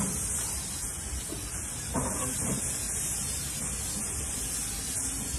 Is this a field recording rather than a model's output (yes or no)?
yes